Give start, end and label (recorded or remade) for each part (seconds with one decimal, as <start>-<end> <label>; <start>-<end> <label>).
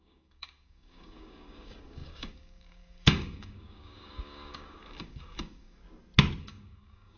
0.0-5.8 remade; 5.8-6.4 recorded; 6.4-7.2 remade